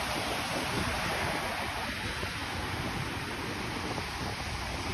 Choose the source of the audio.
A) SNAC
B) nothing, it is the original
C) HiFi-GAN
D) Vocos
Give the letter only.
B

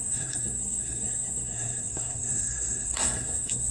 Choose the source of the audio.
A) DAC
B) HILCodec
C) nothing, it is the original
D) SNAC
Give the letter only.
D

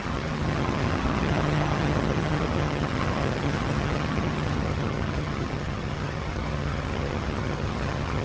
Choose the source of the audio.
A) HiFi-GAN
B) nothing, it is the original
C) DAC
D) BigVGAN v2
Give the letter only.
A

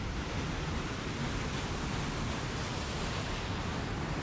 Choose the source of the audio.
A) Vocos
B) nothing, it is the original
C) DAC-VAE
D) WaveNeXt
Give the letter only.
B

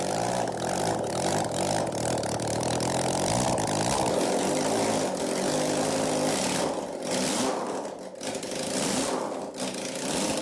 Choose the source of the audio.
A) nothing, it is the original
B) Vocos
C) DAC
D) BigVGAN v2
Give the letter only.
A